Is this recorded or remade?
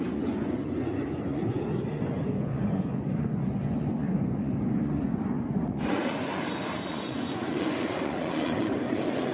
remade